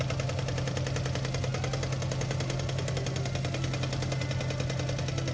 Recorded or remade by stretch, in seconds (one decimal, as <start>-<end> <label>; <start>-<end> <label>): 0.0-5.3 recorded